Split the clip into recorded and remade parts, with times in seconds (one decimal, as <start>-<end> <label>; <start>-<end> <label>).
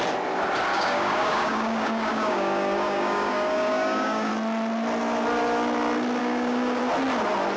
0.0-0.7 recorded; 0.7-4.3 remade; 4.3-6.2 recorded; 6.2-6.8 remade; 6.8-7.6 recorded